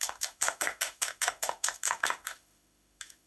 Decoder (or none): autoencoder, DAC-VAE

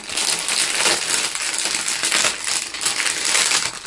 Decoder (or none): none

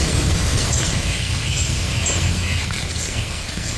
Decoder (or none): codec, SNAC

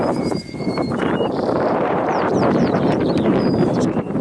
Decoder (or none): vocoder, BigVGAN v2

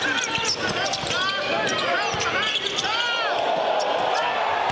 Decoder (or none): none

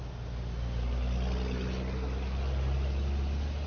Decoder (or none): none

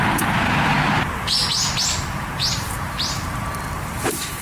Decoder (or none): vocoder, BigVGAN v2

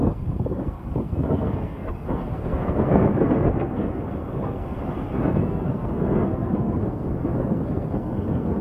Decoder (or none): codec, SNAC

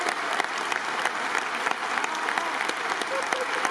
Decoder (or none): none